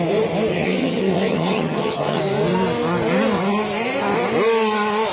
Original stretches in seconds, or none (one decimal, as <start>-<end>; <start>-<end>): 0.0-0.5; 2.2-5.1